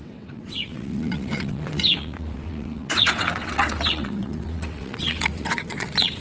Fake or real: fake